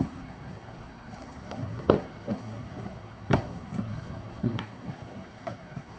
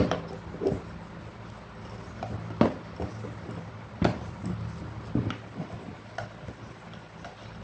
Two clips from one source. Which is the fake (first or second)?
first